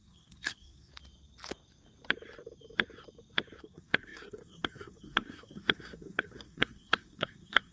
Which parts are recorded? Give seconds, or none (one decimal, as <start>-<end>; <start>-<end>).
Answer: 0.9-3.6